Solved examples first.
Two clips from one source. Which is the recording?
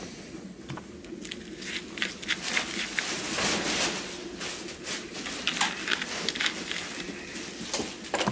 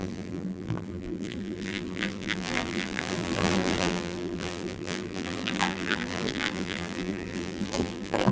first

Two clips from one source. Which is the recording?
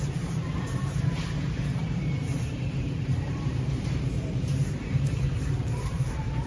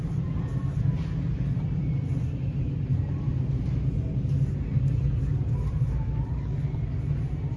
second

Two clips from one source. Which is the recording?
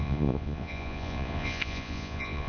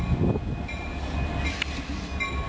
second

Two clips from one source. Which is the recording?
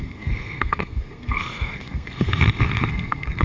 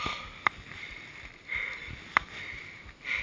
second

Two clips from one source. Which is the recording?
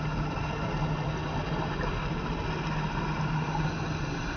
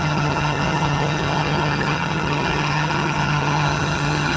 first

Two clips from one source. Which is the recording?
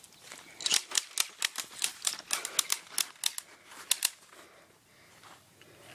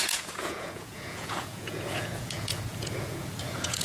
first